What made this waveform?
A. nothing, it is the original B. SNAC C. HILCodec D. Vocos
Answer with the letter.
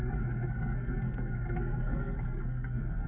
B